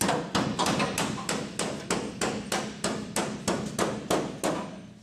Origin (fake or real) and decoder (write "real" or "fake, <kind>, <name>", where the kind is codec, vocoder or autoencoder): real